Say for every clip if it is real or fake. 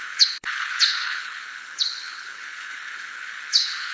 fake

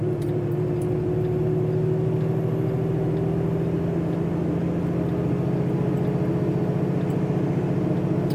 real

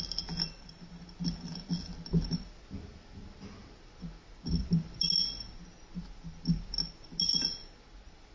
real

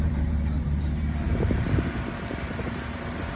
fake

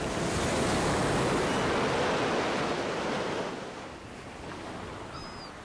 real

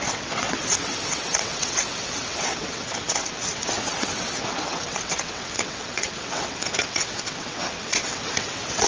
fake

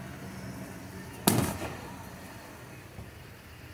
real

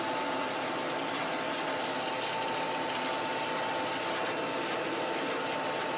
real